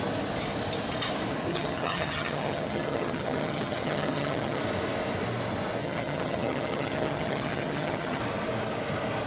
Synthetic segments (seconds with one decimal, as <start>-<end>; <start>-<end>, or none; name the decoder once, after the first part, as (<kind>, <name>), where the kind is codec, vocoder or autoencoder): 1.5-4.6 (vocoder, HiFi-GAN); 5.8-8.2